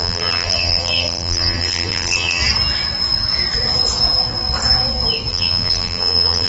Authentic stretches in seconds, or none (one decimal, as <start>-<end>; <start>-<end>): 2.4-5.3